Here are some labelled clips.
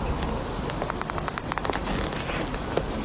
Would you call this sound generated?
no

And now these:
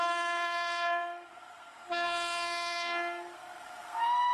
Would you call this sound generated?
yes